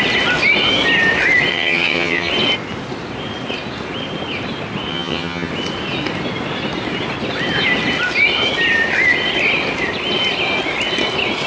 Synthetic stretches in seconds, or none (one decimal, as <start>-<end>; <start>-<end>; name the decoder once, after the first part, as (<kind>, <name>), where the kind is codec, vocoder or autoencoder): 1.5-2.3 (vocoder, HiFi-GAN); 4.9-5.5